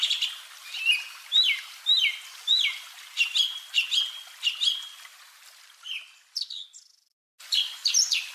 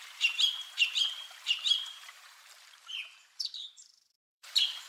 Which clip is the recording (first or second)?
first